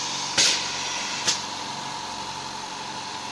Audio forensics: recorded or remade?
recorded